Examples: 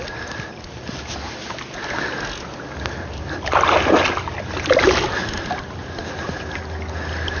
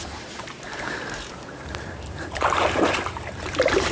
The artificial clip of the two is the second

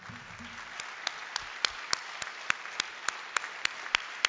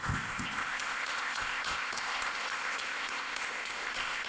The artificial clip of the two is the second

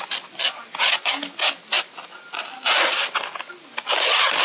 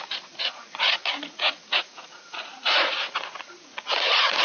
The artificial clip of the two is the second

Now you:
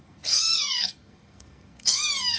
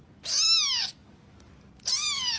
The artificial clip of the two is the first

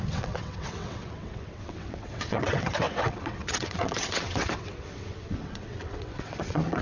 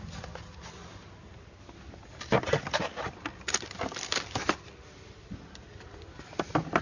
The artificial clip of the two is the first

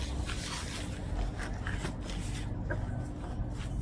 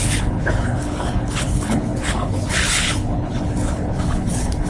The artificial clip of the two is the second